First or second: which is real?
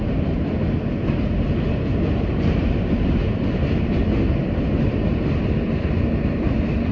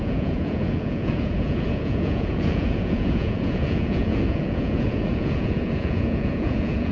first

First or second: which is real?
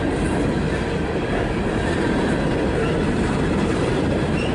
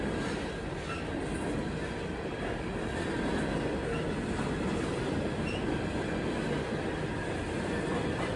second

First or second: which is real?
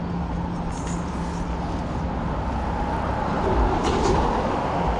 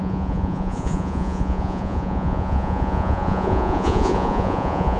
first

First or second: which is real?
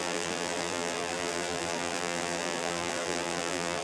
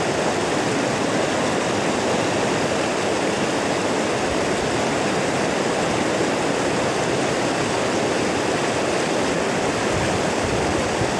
second